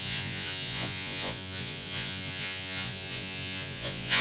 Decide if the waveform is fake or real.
fake